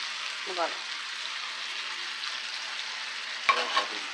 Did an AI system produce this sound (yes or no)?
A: no